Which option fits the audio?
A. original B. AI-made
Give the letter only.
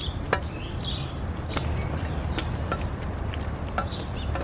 A